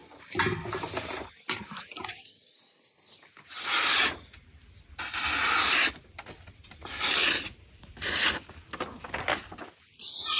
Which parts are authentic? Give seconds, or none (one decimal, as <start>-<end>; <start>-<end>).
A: 0.0-7.2; 8.0-10.4